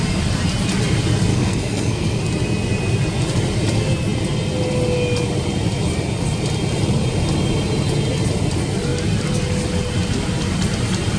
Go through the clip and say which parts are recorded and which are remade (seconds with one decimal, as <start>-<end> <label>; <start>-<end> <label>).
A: 0.0-1.3 recorded; 1.3-2.2 remade; 2.2-11.2 recorded